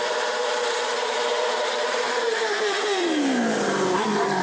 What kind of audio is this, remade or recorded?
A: remade